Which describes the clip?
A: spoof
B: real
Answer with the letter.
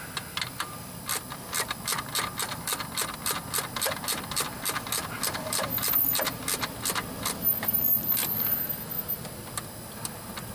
B